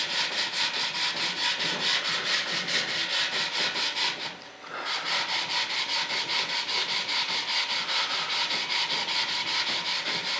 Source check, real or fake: real